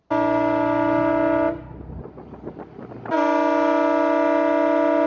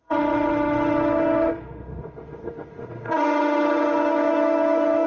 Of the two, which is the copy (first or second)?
second